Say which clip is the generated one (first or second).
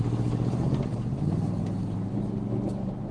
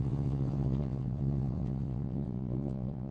second